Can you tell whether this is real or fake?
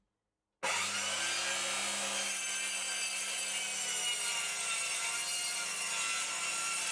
real